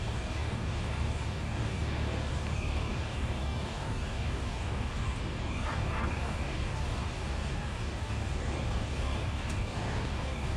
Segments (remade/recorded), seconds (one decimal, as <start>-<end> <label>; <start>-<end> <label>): 0.0-10.6 remade

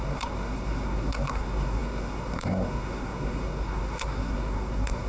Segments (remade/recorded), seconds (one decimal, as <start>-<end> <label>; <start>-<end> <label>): 0.0-5.1 remade

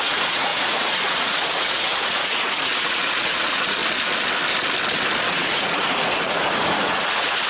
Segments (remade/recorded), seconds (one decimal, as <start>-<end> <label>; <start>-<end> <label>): 0.0-3.8 remade; 3.8-5.3 recorded; 5.3-7.5 remade

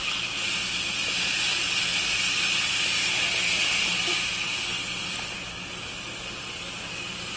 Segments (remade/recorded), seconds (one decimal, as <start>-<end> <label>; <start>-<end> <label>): 0.0-7.4 recorded

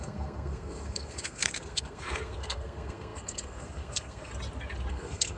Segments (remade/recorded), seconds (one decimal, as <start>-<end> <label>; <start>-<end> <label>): 0.0-4.3 remade; 4.3-4.9 recorded; 4.9-5.4 remade